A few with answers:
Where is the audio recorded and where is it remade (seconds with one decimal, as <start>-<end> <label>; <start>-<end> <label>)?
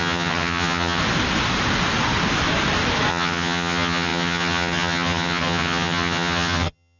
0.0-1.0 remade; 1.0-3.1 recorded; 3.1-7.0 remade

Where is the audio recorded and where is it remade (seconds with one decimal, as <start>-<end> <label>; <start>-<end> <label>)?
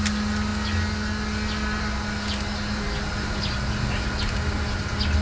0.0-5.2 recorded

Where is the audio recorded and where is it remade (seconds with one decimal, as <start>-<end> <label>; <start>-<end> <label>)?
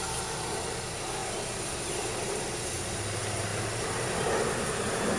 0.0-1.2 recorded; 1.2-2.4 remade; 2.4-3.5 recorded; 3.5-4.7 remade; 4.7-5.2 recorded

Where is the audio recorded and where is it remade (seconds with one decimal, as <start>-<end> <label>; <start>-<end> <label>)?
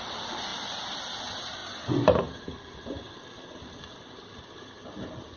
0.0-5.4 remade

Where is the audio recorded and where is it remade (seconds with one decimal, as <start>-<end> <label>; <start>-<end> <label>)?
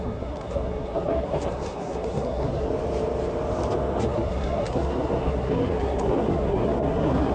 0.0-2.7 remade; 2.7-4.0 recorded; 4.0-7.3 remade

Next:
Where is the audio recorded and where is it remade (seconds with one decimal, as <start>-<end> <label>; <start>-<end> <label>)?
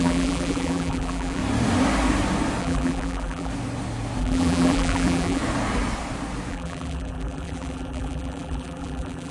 0.0-1.4 remade; 1.4-2.6 recorded; 2.6-3.5 remade; 3.5-4.2 recorded; 4.2-5.4 remade; 5.4-6.5 recorded; 6.5-9.3 remade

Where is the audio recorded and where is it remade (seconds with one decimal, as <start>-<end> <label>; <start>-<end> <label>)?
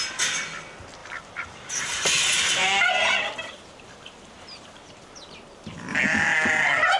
0.0-1.0 recorded; 1.0-4.8 remade; 4.8-7.0 recorded